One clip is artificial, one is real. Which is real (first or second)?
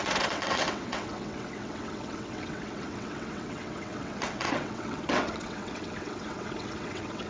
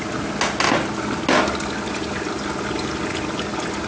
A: second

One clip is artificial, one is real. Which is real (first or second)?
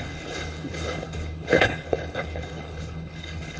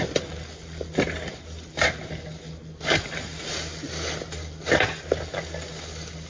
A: second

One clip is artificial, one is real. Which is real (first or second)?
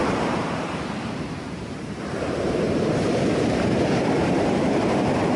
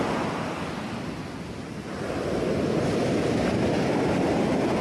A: second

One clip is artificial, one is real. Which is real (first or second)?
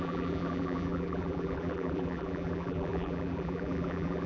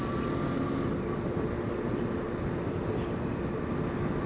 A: second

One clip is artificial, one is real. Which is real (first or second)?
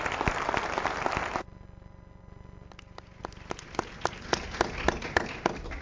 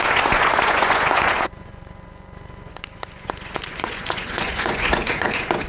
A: first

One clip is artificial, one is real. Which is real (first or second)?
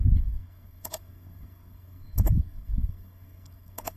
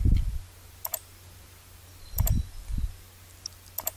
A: second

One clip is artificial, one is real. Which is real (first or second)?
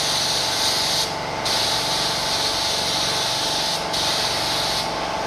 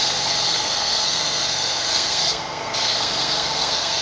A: first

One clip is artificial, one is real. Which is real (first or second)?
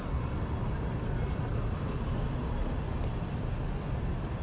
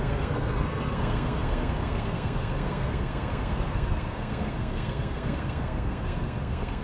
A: first